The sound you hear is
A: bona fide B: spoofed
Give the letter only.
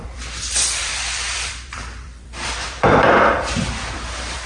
B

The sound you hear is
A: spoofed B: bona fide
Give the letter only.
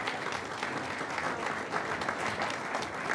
B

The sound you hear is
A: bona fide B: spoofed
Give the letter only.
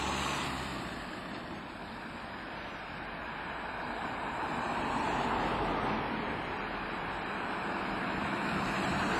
B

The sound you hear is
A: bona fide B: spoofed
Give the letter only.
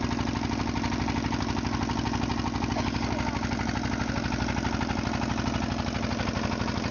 A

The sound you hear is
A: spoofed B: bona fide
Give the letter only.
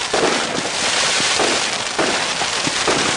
A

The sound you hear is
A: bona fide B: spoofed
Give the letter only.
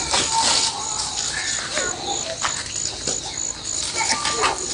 A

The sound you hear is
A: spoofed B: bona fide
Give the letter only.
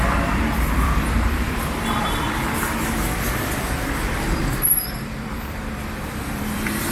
A